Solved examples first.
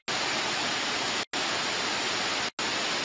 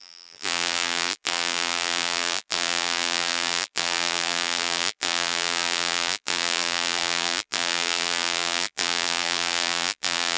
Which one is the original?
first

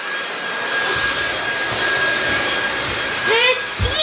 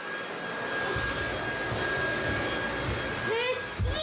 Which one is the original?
second